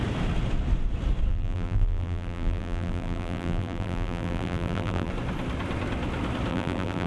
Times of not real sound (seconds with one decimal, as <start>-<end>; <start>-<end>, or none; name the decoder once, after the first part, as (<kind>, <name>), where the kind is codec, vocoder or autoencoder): 1.3-5.1 (vocoder, BigVGAN v2); 6.5-7.1